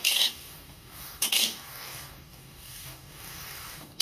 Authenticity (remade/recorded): remade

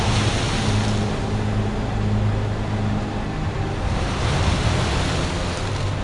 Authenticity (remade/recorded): recorded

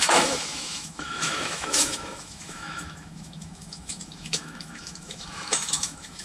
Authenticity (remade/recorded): remade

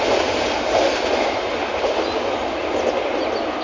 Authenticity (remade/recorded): recorded